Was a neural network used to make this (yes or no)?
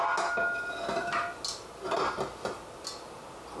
no